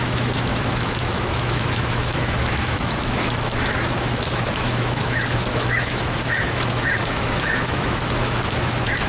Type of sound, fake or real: fake